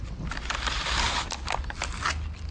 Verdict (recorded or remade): recorded